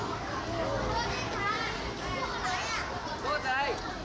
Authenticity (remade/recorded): recorded